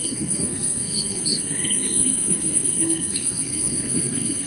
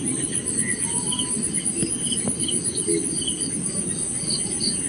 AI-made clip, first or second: first